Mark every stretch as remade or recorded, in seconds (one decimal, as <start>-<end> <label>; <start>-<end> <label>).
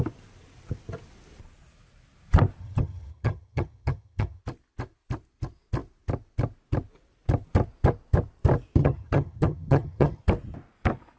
0.0-2.6 recorded; 2.6-4.4 remade; 4.4-8.8 recorded; 8.8-10.2 remade; 10.2-11.2 recorded